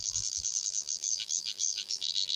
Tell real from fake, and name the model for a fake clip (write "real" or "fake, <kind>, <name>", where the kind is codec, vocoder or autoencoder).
fake, vocoder, BigVGAN v2